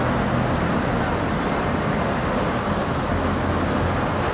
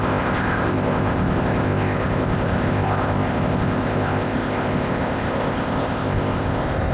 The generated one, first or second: second